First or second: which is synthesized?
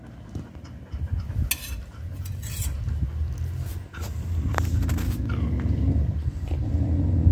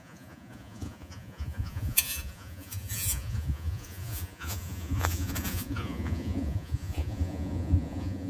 second